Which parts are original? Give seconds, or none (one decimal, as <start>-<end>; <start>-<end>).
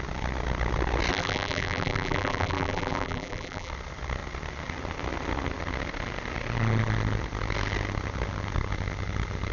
0.0-1.1; 3.7-9.5